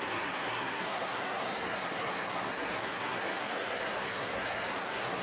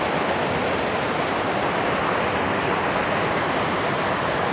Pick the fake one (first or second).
first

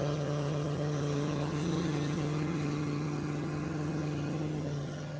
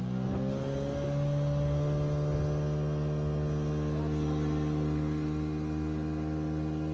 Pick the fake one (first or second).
first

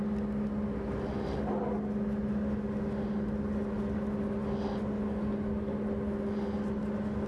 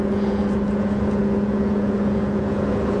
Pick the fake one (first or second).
second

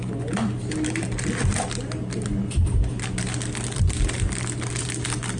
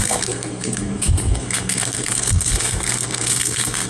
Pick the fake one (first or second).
second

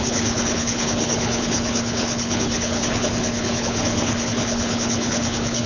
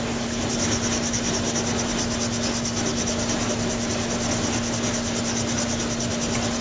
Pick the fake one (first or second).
first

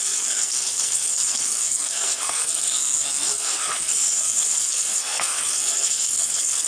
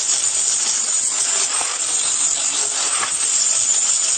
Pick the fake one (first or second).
first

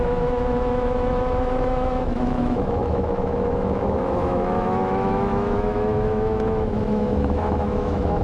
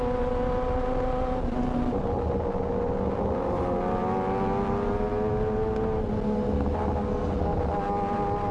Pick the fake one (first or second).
first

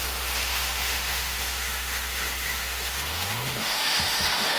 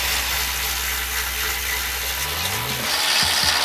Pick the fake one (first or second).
first